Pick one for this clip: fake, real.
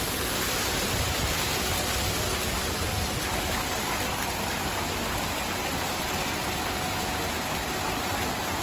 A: real